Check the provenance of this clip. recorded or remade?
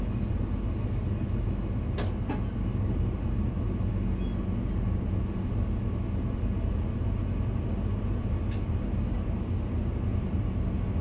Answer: recorded